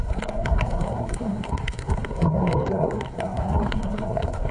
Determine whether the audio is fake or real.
fake